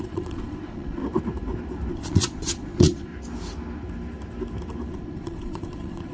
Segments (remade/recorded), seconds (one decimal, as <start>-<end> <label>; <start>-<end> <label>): 0.0-1.0 remade; 1.0-1.9 recorded; 1.9-3.1 remade; 3.1-4.9 recorded; 4.9-6.1 remade